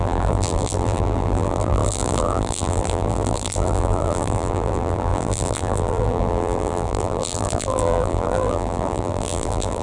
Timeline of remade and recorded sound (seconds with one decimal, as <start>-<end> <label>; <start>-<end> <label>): 0.0-9.8 remade